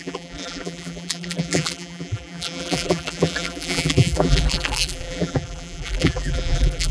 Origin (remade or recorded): remade